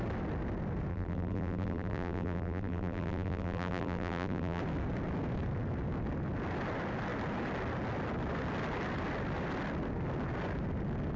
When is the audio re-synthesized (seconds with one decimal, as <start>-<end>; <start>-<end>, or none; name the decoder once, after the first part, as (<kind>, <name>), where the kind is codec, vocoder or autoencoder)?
0.9-4.6 (vocoder, BigVGAN v2)